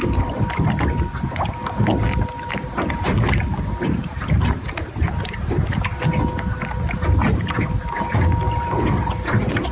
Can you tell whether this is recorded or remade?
recorded